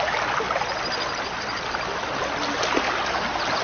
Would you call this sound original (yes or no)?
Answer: yes